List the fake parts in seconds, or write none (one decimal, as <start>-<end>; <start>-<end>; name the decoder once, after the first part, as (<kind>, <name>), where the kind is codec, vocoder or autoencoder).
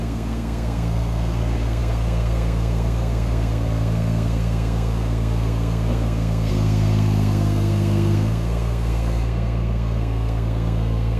0.0-11.2 (codec, SNAC)